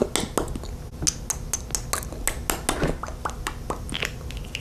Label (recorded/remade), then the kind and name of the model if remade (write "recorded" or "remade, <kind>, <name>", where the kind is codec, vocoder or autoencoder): recorded